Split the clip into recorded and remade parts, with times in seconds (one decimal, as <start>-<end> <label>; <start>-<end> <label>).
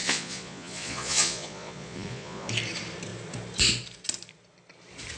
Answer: 0.0-2.5 remade; 2.5-5.2 recorded